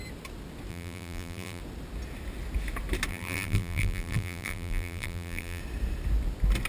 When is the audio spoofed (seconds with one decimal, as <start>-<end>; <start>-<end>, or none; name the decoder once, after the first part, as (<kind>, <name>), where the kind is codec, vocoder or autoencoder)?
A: 0.7-1.6 (vocoder, BigVGAN v2); 3.1-5.6